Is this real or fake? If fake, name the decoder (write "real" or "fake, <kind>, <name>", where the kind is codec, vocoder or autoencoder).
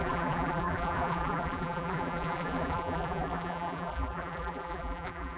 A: fake, vocoder, BigVGAN v2